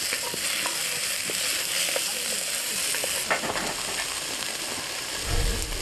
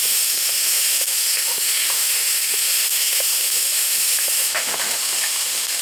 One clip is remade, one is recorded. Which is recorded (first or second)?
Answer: first